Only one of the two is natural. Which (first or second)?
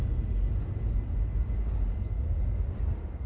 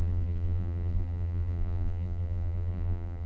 first